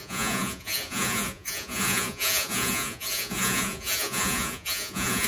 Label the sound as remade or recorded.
remade